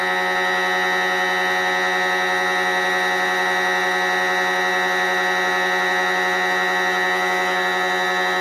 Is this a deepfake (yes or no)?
no